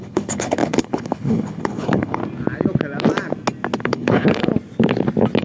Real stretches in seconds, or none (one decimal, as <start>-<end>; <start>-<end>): 2.2-3.8; 4.5-5.4

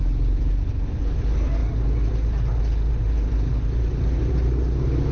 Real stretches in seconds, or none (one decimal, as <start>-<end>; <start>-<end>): 0.0-5.1

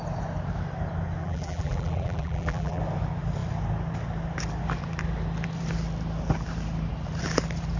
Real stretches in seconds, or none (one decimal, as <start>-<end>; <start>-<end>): 0.0-1.2; 2.8-7.8

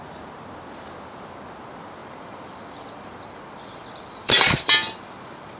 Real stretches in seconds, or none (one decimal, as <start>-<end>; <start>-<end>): 0.0-2.0

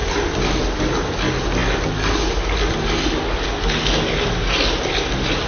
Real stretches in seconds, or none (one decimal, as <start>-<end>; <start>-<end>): 0.0-5.5

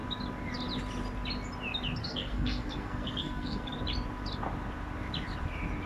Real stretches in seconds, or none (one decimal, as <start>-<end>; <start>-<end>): 0.0-2.0; 3.7-5.9